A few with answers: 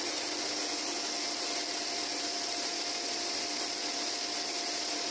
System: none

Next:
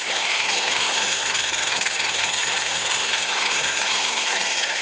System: codec, SNAC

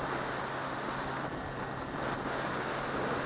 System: none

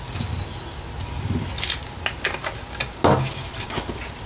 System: none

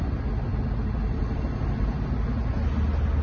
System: none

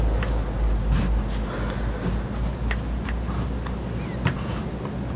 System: none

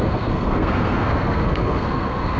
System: codec, SNAC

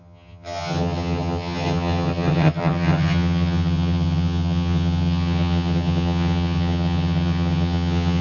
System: vocoder, HiFi-GAN